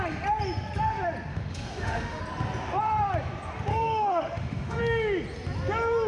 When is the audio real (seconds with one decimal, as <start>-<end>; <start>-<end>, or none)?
0.0-1.3; 2.2-3.7; 4.8-6.1